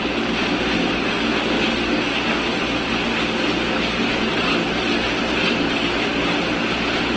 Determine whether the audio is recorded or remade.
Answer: recorded